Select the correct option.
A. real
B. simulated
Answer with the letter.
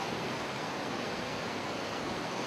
B